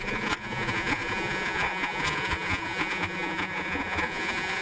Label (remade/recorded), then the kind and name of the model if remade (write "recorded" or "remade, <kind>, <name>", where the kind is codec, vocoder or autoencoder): remade, vocoder, Vocos